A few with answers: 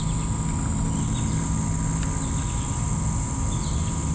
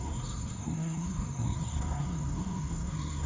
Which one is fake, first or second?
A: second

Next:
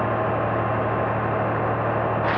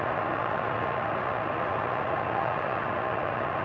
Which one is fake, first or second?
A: second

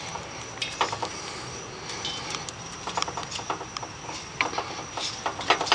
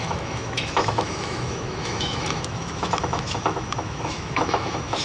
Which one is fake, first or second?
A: second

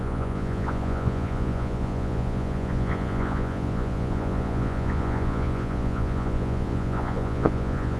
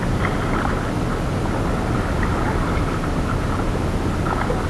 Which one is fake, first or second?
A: first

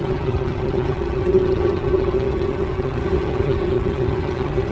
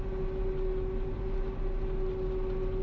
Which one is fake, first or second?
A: first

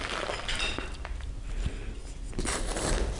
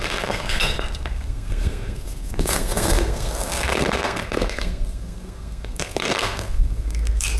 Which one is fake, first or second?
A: second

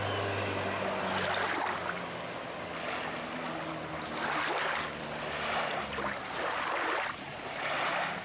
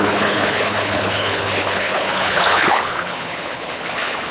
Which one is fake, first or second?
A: second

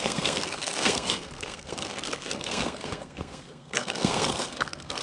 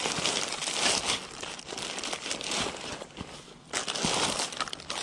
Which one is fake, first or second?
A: first